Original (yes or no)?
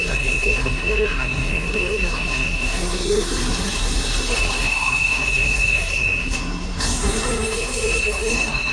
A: no